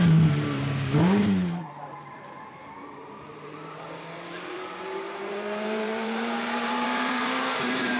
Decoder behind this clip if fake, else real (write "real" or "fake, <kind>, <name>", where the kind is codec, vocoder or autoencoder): fake, vocoder, BigVGAN v2